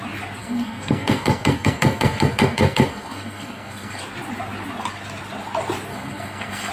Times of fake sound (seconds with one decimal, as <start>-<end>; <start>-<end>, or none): 0.4-4.0; 5.9-6.7